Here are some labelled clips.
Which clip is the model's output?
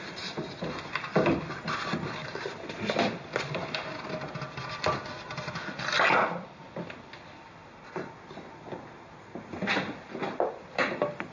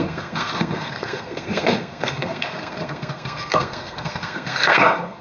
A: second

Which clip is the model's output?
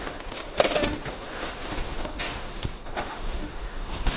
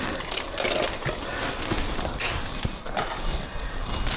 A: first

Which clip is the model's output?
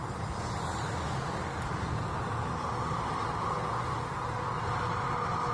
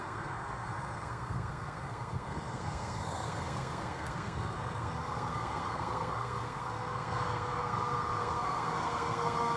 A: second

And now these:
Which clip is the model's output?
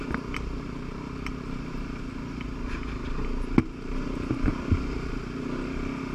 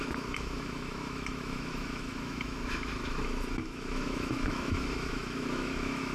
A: second